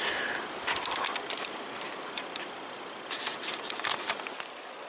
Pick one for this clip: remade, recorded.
recorded